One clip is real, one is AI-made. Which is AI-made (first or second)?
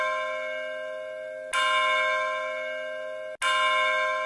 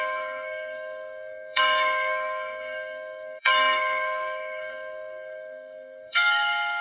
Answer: second